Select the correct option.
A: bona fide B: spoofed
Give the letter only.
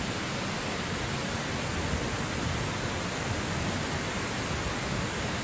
A